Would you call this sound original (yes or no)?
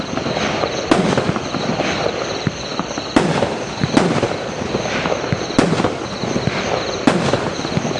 yes